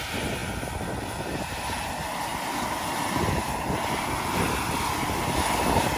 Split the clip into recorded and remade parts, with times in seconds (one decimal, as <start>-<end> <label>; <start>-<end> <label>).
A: 0.0-6.0 recorded